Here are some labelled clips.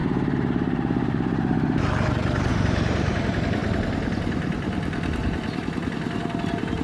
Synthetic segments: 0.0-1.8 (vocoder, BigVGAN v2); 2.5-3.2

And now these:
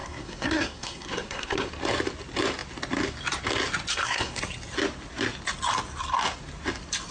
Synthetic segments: 0.0-1.7 (codec, SNAC); 3.9-4.4